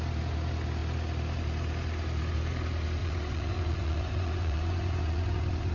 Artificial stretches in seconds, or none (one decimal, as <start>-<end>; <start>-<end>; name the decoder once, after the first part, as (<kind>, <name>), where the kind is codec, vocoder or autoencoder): 3.0-5.7 (vocoder, Vocos)